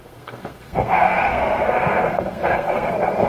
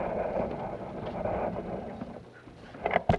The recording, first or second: second